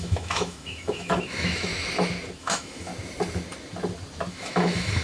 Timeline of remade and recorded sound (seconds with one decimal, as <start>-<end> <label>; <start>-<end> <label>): 0.0-1.7 remade; 1.7-2.4 recorded; 2.4-2.9 remade; 2.9-4.3 recorded; 4.3-5.0 remade